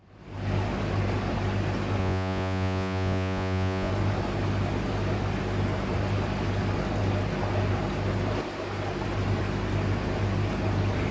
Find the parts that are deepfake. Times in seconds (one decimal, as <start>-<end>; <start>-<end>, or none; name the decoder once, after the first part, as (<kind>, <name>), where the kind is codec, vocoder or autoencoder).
2.0-3.9 (vocoder, Vocos)